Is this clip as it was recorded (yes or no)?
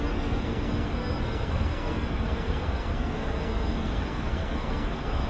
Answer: no